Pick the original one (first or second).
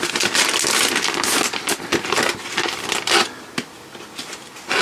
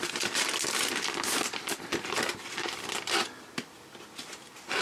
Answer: first